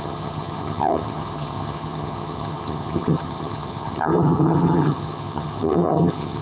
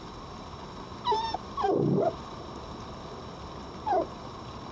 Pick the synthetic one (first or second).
first